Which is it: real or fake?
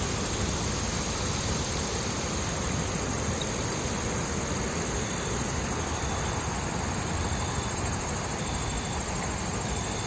real